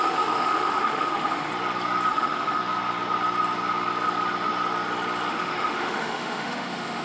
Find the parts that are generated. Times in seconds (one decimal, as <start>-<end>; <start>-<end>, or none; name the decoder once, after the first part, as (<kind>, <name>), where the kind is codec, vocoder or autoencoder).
0.0-1.5 (autoencoder, DAC-VAE); 2.1-2.6; 5.3-7.0